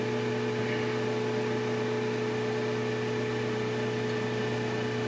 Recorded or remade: recorded